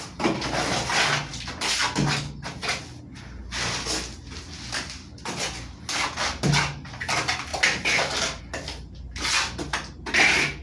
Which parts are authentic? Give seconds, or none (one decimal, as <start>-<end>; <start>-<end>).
0.0-10.6